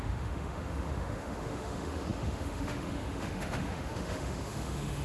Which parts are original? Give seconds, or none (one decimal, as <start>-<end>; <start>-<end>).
none